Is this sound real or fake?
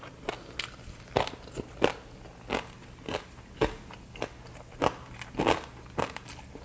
real